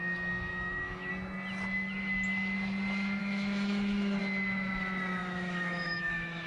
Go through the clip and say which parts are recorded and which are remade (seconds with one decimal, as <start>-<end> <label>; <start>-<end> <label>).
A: 0.0-0.5 recorded; 0.5-1.1 remade; 1.1-3.2 recorded; 3.2-4.2 remade; 4.2-5.2 recorded; 5.2-6.5 remade